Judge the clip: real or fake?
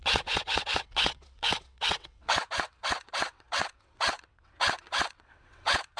fake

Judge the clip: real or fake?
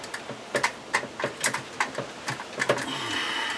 real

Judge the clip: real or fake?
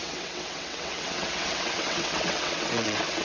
fake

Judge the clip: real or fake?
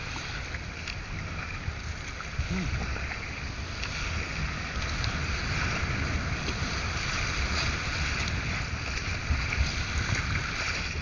real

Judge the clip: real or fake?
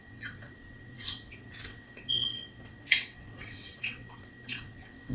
fake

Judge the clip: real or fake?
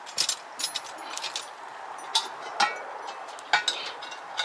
real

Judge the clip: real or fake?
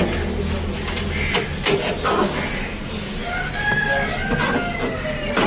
real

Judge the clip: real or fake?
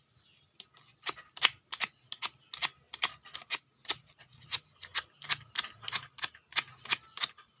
real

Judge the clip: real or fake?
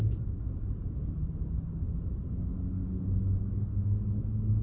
real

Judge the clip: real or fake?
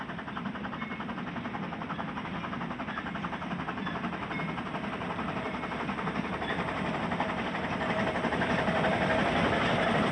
real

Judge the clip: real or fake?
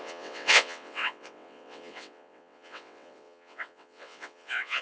fake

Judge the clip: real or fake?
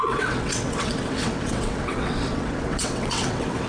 fake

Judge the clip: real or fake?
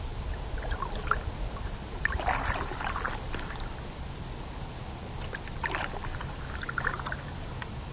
real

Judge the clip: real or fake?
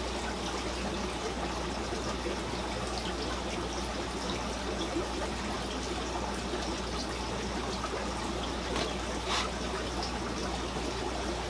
real